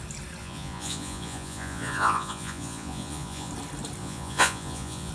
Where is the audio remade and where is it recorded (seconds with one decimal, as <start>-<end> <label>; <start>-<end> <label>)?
0.0-0.4 recorded; 0.4-3.5 remade; 3.5-4.0 recorded; 4.0-5.1 remade